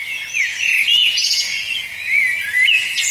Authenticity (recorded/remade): remade